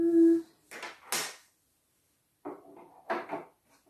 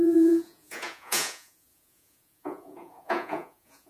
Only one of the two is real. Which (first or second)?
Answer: first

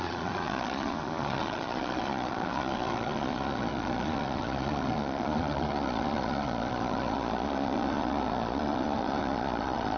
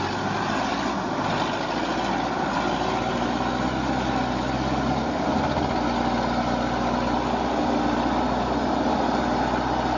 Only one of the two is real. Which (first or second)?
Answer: second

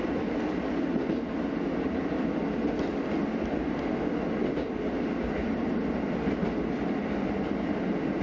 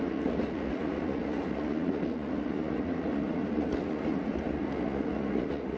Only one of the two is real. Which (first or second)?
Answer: first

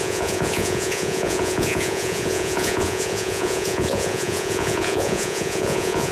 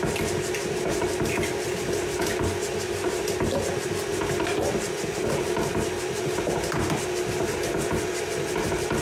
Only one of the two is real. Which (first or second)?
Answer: second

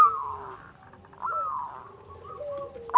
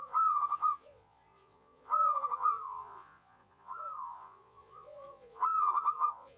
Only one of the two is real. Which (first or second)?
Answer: first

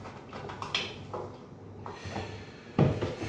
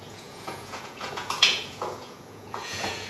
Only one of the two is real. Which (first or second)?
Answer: first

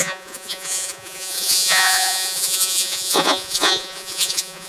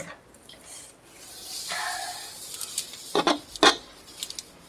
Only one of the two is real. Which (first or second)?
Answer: second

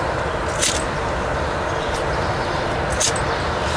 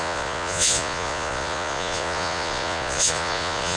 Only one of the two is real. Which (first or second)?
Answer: first